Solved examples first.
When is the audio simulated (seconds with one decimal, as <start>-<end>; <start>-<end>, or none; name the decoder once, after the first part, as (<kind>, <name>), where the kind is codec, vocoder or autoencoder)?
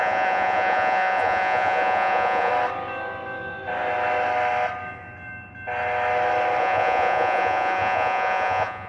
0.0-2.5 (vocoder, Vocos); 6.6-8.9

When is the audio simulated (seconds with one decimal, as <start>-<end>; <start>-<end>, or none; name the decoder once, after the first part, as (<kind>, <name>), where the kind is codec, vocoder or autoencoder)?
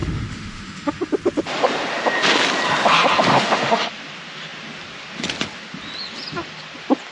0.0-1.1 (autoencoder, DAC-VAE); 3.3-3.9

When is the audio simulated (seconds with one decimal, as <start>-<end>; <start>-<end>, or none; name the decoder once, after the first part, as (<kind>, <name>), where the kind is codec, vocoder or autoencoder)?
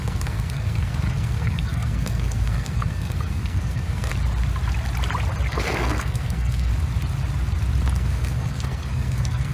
0.0-4.1 (codec, SNAC); 5.5-6.7; 7.9-9.5